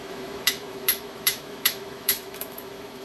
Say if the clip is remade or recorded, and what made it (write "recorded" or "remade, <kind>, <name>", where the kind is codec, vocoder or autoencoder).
remade, autoencoder, DAC-VAE